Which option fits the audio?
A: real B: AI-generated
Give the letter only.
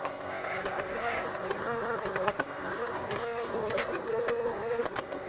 B